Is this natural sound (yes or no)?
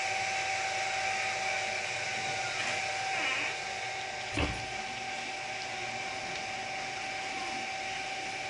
yes